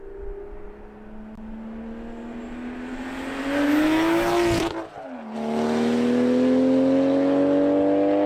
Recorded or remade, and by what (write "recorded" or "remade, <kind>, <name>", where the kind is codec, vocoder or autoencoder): recorded